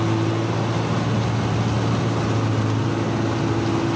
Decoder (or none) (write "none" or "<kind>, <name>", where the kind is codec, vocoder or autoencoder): none